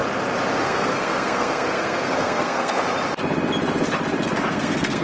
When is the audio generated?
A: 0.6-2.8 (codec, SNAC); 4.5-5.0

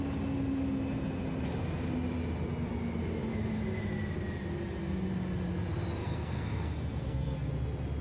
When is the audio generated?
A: 6.0-7.5 (codec, SNAC)

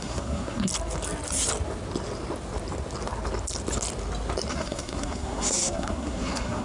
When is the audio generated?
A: 0.0-0.7 (codec, SNAC); 4.5-6.6

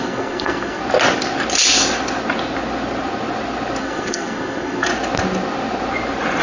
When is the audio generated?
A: 0.0-0.8 (codec, SNAC); 3.8-4.9

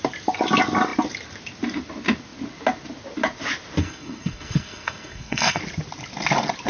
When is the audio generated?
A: 3.8-5.6 (codec, SNAC)

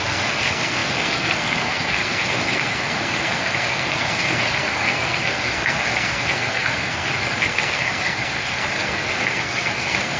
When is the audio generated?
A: 0.0-10.2 (codec, SNAC)

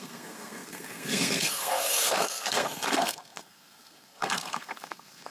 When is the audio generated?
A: 0.0-5.3 (codec, SNAC)